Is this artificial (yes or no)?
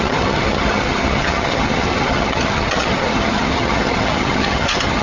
yes